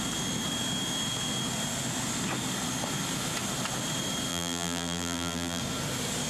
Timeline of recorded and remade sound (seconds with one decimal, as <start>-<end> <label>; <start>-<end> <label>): 0.0-4.3 recorded; 4.3-5.6 remade; 5.6-6.3 recorded